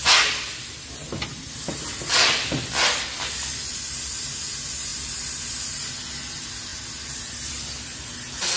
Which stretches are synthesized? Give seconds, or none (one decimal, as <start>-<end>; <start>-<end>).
none

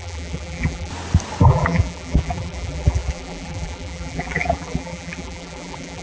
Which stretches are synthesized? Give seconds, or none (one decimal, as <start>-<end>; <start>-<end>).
0.0-0.9; 1.4-6.0